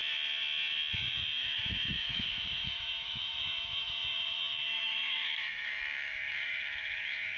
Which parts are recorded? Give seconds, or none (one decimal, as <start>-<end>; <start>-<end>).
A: 0.0-1.0